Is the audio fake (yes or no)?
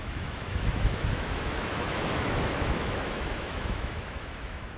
yes